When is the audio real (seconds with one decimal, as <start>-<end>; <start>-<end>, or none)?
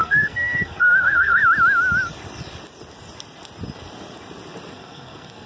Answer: 1.4-4.7